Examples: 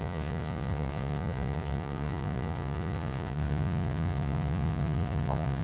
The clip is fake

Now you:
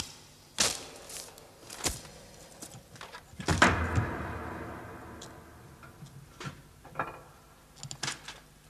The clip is real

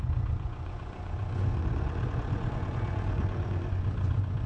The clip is fake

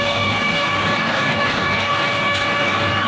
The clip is fake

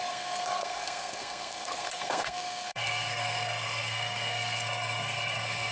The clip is fake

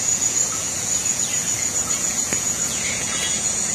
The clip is fake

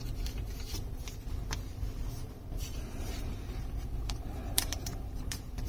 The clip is fake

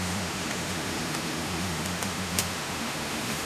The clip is fake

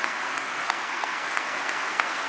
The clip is fake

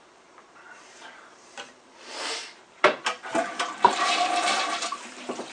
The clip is fake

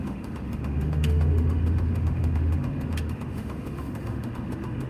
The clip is fake